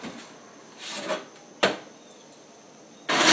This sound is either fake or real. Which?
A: real